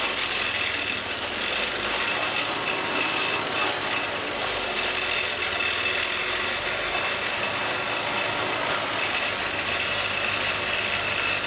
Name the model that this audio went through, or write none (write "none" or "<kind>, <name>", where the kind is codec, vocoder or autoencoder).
none